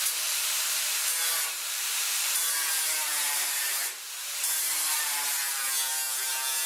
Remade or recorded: remade